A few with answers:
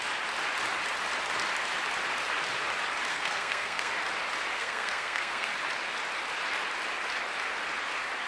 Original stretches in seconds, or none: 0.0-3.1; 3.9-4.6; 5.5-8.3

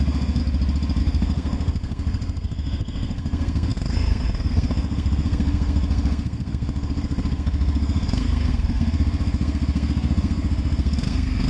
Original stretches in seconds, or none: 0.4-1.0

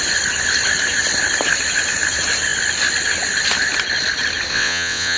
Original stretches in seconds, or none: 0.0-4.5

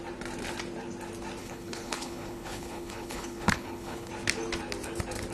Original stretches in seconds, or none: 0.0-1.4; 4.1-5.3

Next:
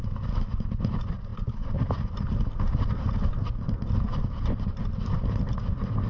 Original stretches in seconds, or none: 0.0-6.1

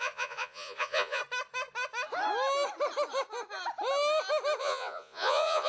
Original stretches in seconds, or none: 1.2-4.6

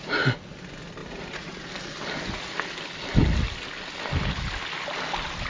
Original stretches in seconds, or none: 0.0-1.0; 1.6-5.5